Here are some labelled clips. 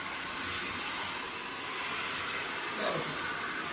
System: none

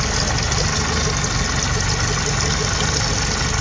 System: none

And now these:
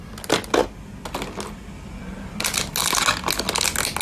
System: none